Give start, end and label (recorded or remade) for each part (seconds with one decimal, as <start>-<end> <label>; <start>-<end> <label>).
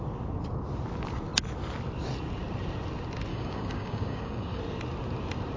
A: 0.0-3.3 recorded; 3.3-4.6 remade; 4.6-5.6 recorded